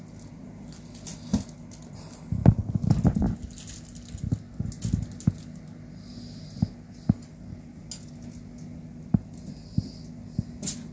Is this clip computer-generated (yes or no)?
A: no